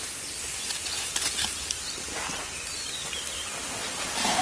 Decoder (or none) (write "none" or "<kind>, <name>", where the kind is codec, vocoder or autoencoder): none